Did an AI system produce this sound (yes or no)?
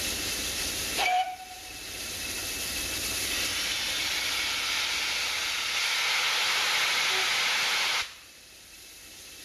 no